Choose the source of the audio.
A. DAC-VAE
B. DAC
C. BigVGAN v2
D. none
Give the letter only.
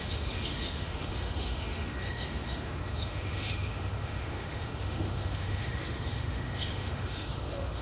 A